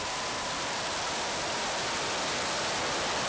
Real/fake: fake